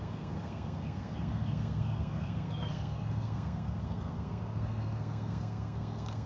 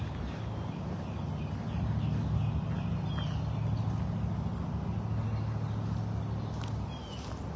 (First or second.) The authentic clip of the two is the second